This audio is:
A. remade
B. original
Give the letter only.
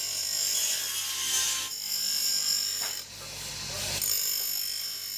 B